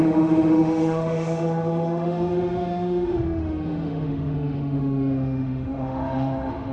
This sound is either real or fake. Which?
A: fake